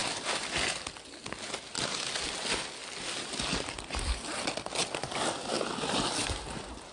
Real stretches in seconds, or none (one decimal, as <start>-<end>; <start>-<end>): 0.0-6.9